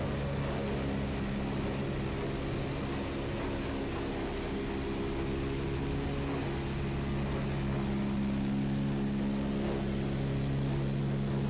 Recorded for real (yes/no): yes